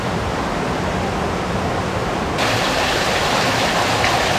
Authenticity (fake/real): real